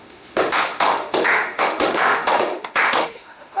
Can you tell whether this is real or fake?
fake